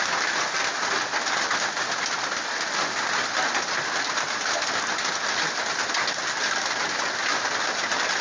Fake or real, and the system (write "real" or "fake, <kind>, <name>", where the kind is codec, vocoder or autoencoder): real